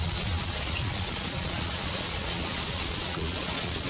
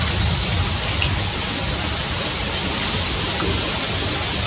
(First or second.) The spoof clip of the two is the first